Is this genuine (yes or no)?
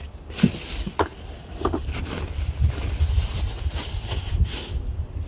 yes